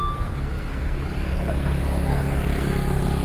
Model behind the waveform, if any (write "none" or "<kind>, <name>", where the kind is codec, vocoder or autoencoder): codec, SNAC